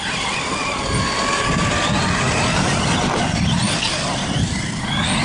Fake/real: real